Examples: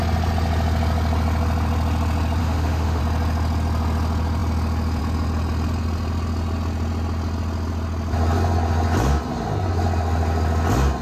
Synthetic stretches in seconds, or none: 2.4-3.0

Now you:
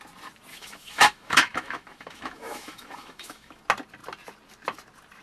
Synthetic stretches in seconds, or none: 0.5-3.6

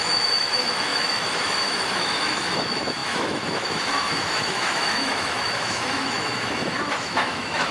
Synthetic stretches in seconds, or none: 0.0-7.7

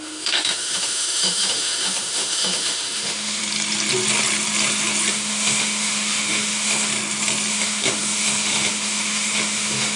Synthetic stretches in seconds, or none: 0.0-3.4; 5.1-6.9; 7.5-10.0